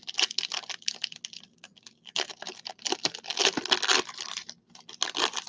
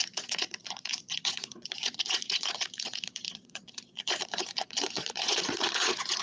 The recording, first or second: first